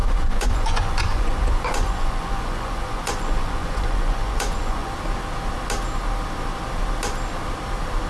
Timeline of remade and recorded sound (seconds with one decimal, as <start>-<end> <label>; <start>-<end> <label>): 0.0-4.9 remade; 4.9-8.1 recorded